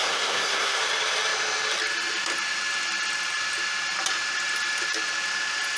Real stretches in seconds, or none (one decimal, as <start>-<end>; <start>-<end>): 0.8-5.8